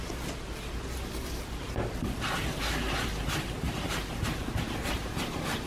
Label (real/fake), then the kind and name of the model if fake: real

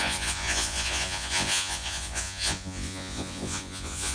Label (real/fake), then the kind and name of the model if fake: fake, vocoder, Vocos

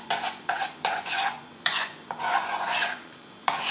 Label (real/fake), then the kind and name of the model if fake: fake, vocoder, Vocos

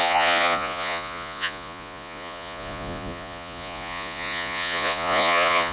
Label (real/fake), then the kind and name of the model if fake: fake, vocoder, Vocos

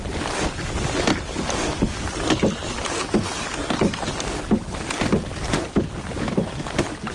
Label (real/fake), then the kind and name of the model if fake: real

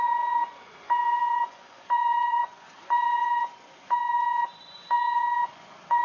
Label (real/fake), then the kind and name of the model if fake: fake, vocoder, Vocos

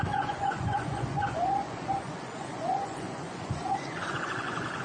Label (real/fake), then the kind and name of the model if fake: fake, vocoder, Vocos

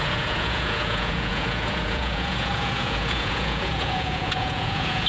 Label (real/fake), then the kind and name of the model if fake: fake, vocoder, Vocos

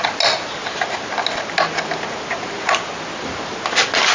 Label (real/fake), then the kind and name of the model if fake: real